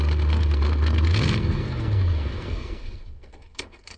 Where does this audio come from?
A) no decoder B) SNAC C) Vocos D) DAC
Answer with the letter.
B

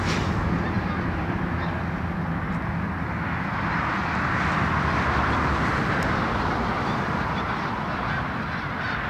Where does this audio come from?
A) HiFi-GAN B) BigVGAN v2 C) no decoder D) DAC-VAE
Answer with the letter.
C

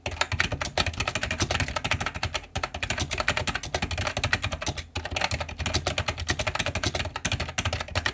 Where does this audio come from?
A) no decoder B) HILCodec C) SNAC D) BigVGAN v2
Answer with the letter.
A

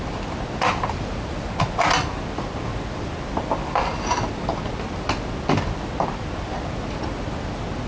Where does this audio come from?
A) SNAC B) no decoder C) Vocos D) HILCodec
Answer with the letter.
B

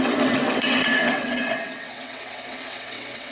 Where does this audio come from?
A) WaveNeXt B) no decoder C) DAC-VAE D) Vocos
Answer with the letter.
A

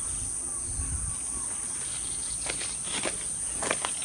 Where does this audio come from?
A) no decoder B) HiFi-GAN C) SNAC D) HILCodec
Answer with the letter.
A